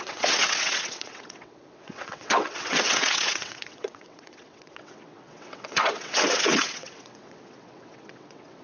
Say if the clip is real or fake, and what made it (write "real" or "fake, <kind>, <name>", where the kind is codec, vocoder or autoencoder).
fake, vocoder, WaveNeXt